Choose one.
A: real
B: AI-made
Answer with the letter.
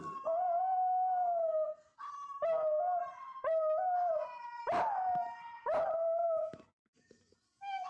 A